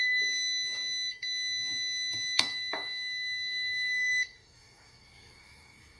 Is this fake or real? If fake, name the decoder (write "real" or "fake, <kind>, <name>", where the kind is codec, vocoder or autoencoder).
fake, autoencoder, DAC-VAE